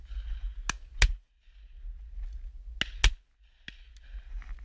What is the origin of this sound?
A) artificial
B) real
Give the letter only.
B